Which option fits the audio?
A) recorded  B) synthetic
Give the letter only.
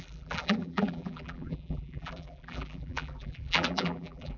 B